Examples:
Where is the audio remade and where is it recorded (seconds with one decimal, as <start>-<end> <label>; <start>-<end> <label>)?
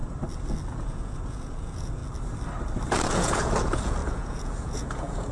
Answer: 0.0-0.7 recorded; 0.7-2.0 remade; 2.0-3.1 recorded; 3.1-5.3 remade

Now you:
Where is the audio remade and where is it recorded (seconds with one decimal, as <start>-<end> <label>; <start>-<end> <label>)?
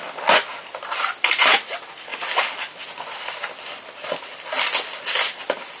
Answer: 0.0-5.8 recorded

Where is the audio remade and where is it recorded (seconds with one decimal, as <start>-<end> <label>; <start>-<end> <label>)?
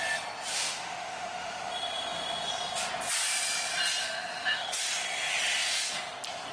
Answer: 0.0-0.5 recorded; 0.5-1.7 remade; 1.7-4.0 recorded; 4.0-4.8 remade; 4.8-6.5 recorded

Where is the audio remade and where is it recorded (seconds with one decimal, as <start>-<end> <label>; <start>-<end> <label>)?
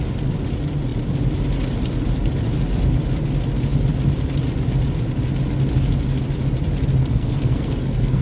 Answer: 0.0-7.0 recorded; 7.0-8.2 remade